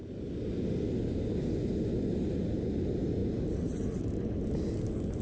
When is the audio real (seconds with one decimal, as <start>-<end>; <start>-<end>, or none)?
0.5-3.2; 4.0-5.2